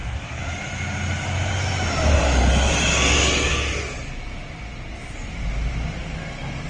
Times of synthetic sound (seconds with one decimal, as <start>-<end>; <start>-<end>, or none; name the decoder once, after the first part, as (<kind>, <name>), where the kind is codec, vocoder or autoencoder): none